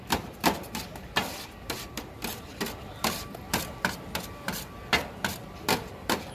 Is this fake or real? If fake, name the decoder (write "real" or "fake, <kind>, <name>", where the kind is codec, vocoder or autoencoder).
fake, vocoder, BigVGAN v2